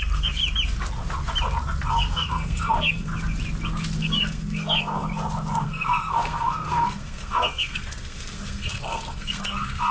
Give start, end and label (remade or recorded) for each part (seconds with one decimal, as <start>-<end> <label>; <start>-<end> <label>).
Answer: 0.0-0.4 remade; 0.4-1.9 recorded; 1.9-3.1 remade; 3.1-4.0 recorded; 4.0-5.1 remade; 5.1-5.6 recorded; 5.6-9.9 remade